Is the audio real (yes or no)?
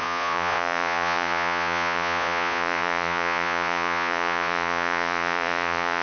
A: no